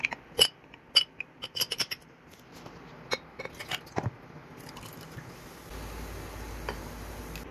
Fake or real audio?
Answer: real